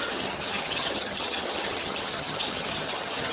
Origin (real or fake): fake